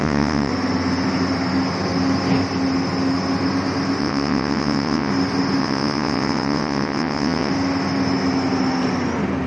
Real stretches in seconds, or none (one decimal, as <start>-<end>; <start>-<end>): 0.5-4.0; 5.1-5.6; 7.5-9.5